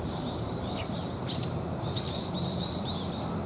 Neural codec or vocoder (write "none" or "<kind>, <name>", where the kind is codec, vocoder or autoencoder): vocoder, BigVGAN v2